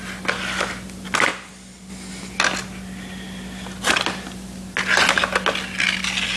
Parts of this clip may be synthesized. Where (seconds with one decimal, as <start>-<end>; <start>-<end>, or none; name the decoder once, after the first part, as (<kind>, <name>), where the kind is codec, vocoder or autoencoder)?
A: none